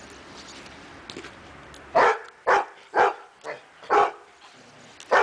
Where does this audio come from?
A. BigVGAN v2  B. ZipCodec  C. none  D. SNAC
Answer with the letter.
C